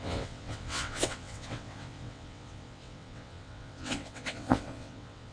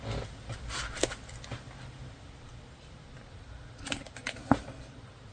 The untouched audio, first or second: second